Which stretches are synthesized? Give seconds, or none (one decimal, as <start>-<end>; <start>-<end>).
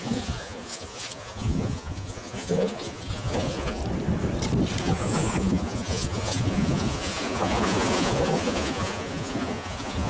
0.0-3.8; 4.8-10.1